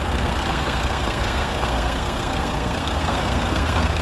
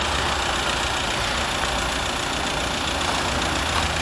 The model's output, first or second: first